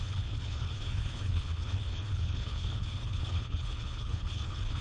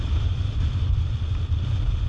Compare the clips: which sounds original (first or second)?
second